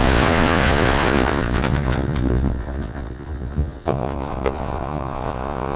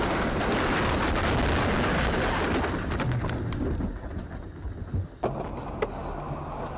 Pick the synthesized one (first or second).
first